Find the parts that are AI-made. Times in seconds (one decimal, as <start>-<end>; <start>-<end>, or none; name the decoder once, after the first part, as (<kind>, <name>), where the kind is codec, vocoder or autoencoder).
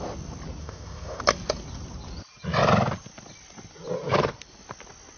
0.6-1.2 (codec, ZipCodec)